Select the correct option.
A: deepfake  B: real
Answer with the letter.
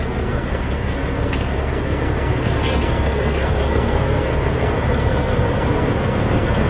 A